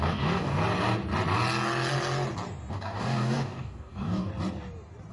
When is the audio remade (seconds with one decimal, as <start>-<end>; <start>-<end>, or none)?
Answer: 0.0-0.6; 2.7-4.3